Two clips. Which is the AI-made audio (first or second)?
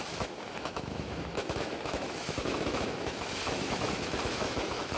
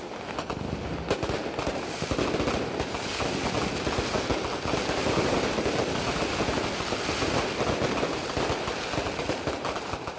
first